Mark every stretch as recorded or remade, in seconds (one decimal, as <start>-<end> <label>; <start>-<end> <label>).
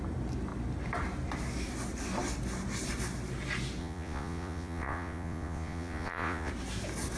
0.0-3.8 recorded; 3.8-6.5 remade; 6.5-7.2 recorded